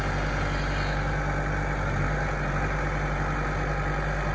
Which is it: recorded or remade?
recorded